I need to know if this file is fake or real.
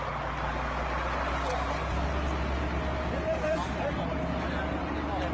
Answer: real